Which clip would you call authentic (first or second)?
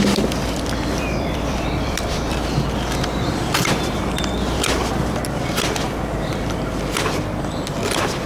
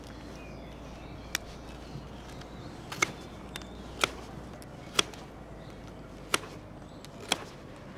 second